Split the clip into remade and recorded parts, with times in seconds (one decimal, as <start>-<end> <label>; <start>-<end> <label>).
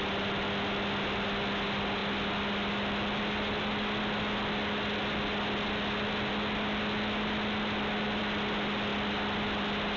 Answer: 0.0-10.0 recorded